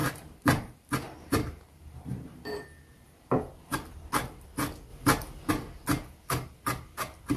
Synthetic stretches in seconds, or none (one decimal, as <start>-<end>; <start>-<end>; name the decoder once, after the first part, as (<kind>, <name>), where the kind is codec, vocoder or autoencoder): 0.0-2.4 (vocoder, BigVGAN v2)